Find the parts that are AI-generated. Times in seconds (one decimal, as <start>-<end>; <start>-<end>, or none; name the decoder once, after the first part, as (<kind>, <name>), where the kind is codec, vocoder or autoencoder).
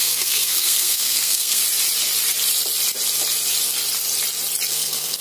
0.0-1.6 (codec, SNAC); 4.7-5.2